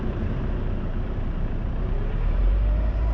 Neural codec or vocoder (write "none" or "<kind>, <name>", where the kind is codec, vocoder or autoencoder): vocoder, BigVGAN v2